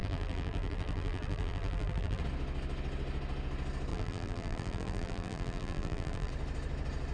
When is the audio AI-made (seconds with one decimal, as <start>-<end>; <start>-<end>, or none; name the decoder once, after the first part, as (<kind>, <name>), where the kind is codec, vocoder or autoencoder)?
0.0-2.2 (vocoder, BigVGAN v2); 3.9-6.3